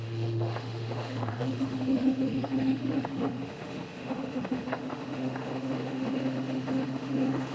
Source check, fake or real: fake